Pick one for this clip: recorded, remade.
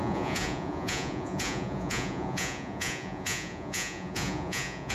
remade